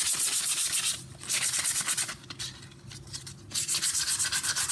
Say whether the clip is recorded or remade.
recorded